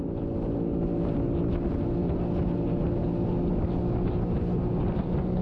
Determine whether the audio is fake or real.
real